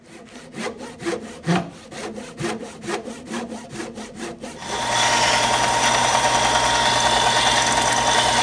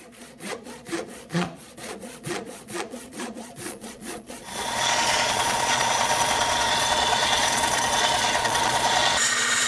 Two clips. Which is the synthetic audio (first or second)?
second